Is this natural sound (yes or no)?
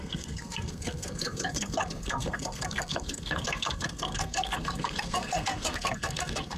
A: no